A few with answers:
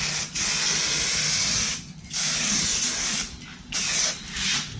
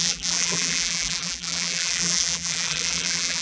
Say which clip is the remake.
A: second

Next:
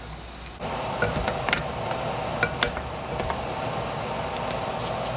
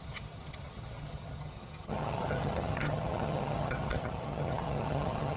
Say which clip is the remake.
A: second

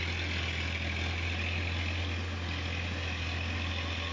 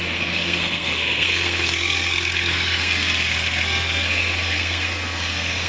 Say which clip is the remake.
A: second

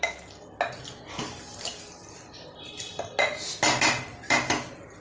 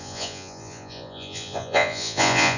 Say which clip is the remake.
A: second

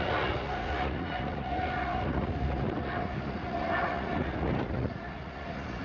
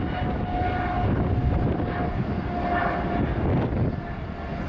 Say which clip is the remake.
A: first